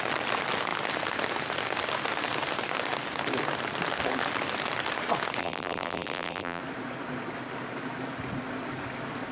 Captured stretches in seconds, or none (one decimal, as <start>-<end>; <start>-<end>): 0.0-5.4; 6.6-9.3